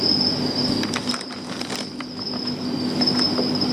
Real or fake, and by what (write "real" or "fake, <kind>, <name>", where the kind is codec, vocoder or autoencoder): real